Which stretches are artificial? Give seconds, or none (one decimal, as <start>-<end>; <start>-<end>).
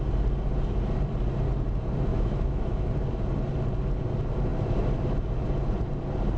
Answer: 2.1-2.9